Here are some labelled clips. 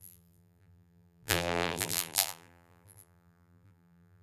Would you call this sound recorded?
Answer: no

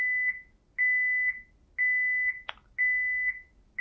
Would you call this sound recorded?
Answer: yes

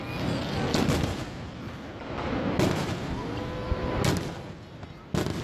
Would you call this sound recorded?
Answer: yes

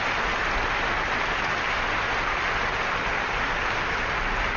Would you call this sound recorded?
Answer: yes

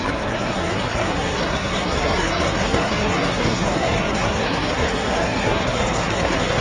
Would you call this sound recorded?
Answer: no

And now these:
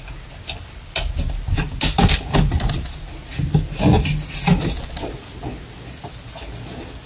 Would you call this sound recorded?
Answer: yes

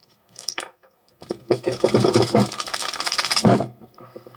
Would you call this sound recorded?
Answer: no